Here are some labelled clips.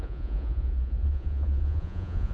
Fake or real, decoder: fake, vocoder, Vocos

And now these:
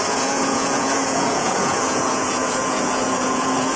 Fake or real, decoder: fake, vocoder, Vocos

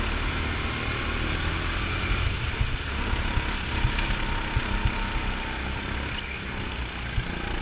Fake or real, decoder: real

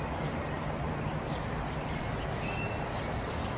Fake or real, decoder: real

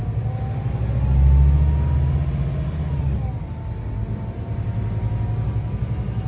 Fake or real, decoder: real